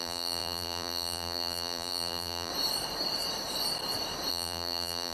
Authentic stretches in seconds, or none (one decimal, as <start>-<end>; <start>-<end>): 2.5-4.3